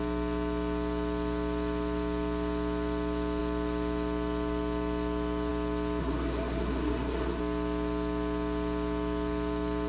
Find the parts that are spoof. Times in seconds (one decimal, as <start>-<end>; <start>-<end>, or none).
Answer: 6.0-7.4